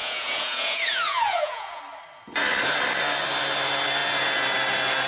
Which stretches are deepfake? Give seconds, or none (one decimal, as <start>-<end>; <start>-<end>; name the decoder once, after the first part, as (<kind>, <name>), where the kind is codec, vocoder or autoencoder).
0.0-1.8 (vocoder, Vocos)